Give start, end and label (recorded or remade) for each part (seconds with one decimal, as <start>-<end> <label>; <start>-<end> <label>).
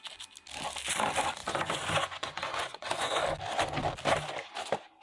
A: 0.0-1.4 recorded; 1.4-3.2 remade; 3.2-5.0 recorded